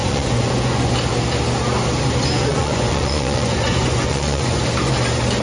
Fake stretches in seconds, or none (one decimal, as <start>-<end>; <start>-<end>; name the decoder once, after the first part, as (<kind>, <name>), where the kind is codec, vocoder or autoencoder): 0.0-0.9 (vocoder, Vocos); 2.5-4.6

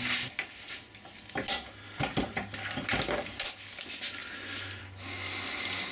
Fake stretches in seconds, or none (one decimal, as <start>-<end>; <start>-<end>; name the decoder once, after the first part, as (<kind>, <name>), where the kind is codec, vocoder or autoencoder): none

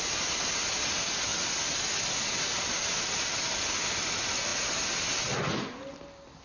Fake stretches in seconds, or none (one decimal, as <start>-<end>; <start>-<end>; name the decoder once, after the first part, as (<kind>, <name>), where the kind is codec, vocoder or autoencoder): none

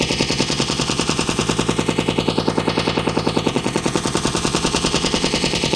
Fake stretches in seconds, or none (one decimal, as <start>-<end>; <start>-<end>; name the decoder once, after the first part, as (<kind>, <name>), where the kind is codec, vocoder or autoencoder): 0.0-1.4 (vocoder, Vocos); 3.5-5.8

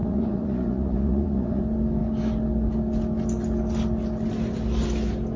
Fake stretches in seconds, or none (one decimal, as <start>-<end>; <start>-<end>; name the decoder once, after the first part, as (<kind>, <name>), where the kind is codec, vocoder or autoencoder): 0.0-1.6 (vocoder, Vocos)

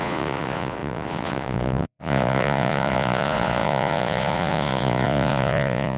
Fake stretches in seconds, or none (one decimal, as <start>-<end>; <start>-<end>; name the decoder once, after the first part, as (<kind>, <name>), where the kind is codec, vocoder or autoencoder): 0.0-6.0 (vocoder, Vocos)

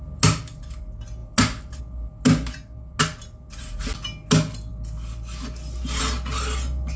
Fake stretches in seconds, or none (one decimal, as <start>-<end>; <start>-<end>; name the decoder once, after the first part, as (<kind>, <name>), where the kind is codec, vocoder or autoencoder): none